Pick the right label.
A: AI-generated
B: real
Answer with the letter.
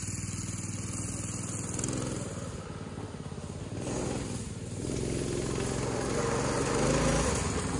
B